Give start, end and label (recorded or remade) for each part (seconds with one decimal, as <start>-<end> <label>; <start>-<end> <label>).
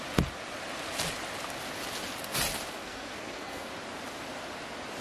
0.0-2.8 recorded; 2.8-3.7 remade; 3.7-5.0 recorded